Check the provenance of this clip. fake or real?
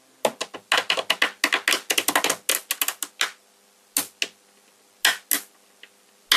real